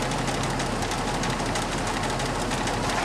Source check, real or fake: real